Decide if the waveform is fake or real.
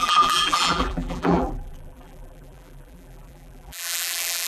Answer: fake